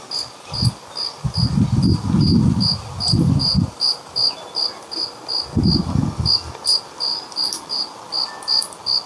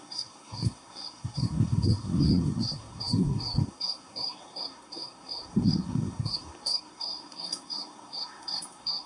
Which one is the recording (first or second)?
first